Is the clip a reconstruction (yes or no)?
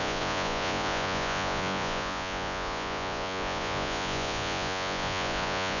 yes